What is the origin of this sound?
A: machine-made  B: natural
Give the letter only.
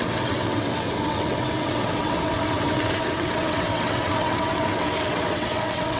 A